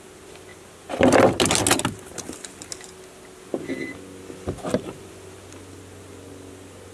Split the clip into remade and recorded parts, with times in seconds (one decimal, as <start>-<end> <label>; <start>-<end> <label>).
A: 0.0-6.9 recorded